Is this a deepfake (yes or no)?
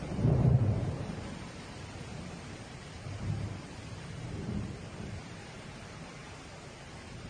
yes